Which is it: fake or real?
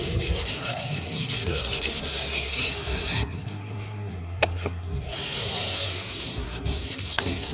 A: fake